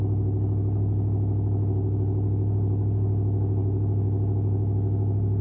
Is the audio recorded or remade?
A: recorded